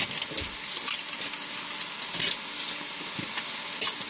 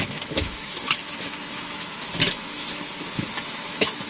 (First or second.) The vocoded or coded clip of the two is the second